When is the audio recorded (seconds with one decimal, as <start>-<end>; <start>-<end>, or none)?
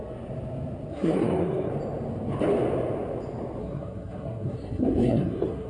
0.0-0.9; 1.7-3.6